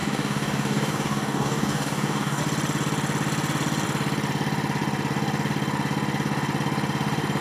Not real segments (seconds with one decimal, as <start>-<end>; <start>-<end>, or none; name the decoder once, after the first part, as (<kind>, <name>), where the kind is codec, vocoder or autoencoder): 0.0-2.4 (codec, DAC)